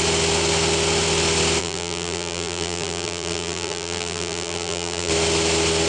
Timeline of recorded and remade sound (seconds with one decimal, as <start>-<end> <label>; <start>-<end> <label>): 0.0-1.6 recorded; 1.6-5.1 remade; 5.1-5.9 recorded